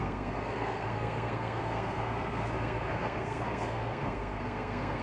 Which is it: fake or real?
fake